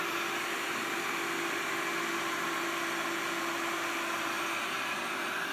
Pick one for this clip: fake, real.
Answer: real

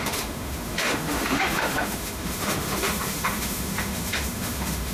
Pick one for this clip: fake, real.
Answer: fake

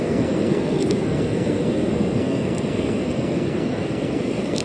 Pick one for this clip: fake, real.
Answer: fake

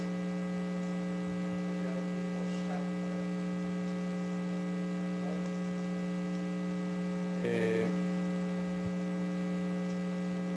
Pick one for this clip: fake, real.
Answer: real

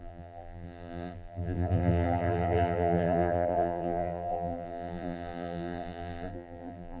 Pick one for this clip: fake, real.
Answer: fake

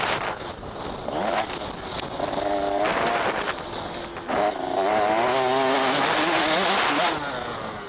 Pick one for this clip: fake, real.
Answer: real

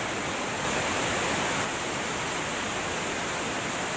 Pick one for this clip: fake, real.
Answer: real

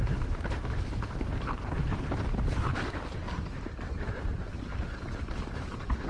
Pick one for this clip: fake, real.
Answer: fake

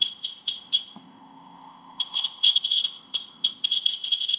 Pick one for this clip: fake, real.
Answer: fake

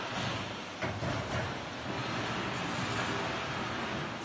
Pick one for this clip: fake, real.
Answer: real